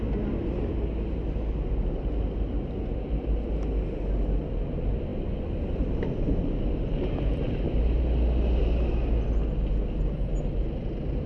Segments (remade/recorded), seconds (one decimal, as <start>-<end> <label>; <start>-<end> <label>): 0.0-11.3 recorded